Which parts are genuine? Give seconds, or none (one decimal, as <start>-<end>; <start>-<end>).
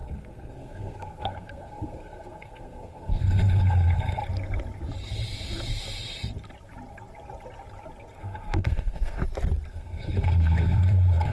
4.2-8.2; 9.2-9.7